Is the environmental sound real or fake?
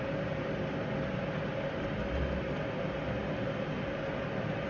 real